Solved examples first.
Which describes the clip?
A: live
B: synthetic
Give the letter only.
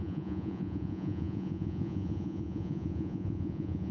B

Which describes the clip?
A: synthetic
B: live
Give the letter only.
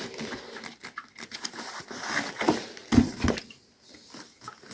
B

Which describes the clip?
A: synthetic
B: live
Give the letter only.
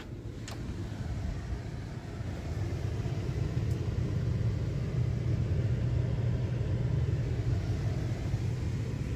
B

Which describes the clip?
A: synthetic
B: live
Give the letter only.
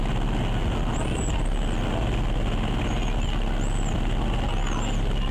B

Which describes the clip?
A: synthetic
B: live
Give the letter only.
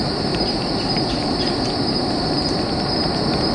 B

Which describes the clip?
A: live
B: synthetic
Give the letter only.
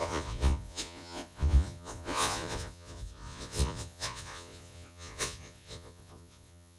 B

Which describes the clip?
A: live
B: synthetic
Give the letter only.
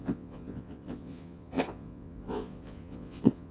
B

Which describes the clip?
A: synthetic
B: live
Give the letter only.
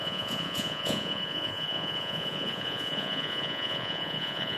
A